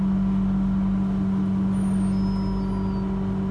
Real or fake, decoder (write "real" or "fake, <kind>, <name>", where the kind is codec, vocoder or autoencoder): real